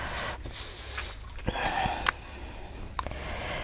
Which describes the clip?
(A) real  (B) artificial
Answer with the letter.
A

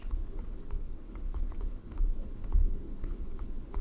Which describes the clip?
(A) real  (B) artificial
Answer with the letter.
B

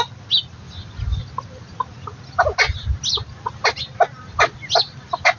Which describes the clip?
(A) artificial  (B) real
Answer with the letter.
B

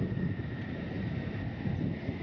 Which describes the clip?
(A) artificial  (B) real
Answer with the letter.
B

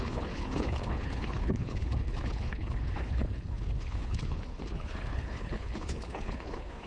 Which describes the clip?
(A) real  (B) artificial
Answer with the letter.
B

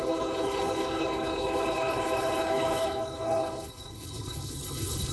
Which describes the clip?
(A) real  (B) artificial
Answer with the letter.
B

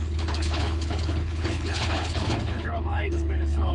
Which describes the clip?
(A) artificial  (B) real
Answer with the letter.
A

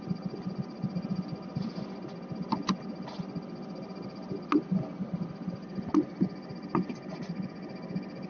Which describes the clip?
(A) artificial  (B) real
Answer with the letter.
B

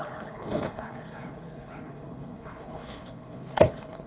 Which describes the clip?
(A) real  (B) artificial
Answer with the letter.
B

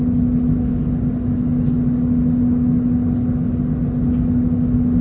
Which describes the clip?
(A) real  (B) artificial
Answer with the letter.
A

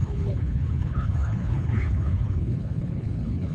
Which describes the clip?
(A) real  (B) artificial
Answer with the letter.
B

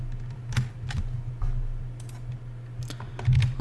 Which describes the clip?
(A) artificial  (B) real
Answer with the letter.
B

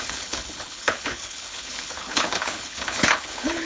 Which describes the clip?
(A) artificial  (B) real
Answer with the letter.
A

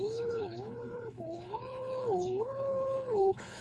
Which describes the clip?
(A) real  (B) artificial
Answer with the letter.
B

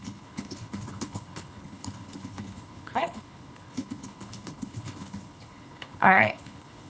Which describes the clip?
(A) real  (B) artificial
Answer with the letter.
B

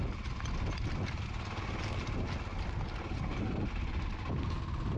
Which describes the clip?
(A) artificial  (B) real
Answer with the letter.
B